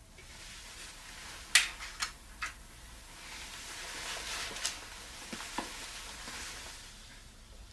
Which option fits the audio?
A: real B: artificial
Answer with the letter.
A